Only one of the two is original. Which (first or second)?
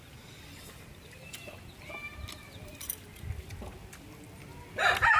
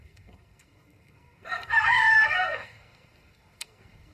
first